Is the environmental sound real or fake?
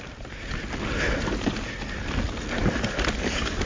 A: real